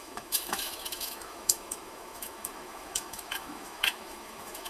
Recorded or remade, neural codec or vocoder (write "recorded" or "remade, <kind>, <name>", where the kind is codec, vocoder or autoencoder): remade, autoencoder, DAC-VAE